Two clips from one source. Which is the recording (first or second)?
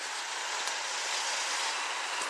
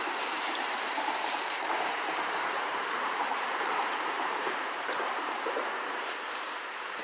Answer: first